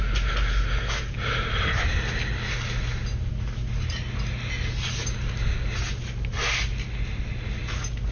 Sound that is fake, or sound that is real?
real